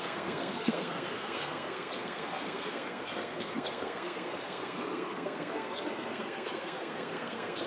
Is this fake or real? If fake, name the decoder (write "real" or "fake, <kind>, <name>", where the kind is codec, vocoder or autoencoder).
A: fake, codec, SNAC